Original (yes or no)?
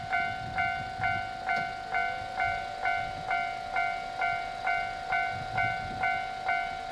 yes